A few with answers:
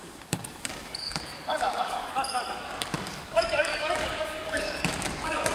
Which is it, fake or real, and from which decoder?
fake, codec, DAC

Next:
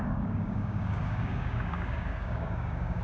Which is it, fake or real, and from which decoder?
fake, codec, DAC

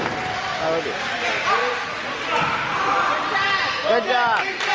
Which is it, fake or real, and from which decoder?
real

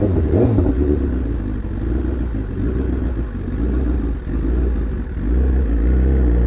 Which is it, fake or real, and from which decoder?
real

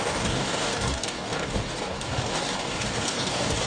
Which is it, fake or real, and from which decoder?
fake, codec, DAC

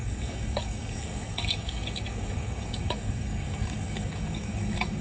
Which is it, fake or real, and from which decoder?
fake, codec, DAC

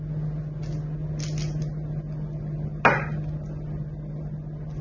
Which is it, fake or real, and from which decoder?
real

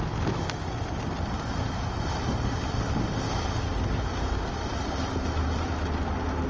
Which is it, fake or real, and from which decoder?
real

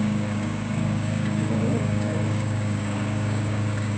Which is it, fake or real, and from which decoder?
fake, codec, DAC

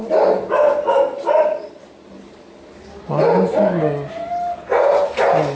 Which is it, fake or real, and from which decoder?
real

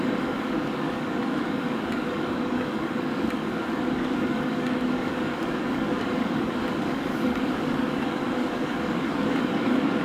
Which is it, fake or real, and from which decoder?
fake, codec, DAC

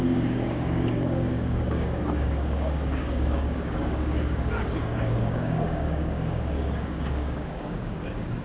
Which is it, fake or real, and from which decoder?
fake, codec, DAC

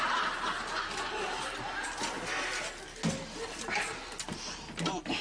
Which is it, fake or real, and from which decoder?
real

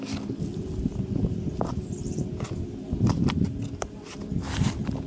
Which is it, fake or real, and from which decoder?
real